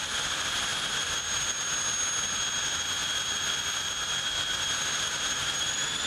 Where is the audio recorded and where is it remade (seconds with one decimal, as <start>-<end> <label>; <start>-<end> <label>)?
0.0-6.1 recorded